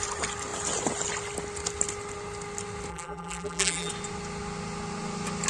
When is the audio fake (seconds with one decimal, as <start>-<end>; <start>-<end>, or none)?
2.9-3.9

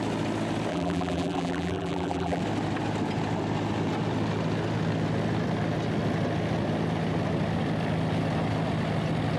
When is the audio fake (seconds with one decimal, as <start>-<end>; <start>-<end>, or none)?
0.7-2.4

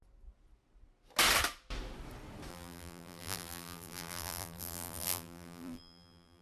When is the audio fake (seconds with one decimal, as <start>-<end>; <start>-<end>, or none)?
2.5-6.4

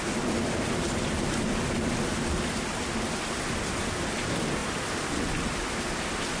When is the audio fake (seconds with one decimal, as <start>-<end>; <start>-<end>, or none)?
0.0-4.6